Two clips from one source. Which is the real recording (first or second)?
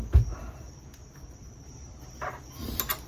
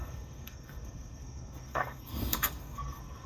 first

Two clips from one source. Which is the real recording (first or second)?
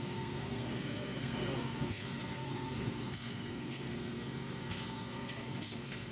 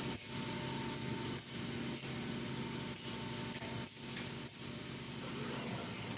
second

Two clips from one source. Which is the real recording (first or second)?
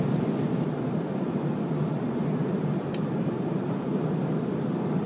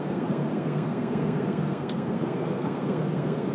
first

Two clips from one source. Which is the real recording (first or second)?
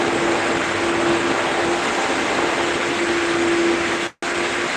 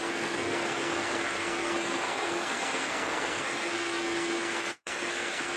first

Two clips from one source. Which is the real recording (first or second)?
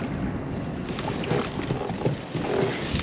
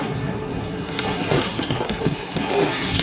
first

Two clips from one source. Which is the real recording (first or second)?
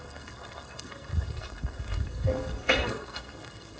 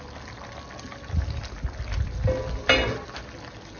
second